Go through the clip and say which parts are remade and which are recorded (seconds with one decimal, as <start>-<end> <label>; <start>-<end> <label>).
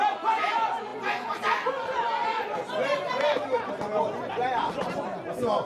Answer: 0.0-5.7 recorded